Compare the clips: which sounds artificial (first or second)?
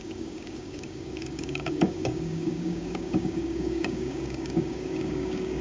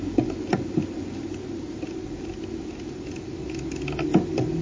first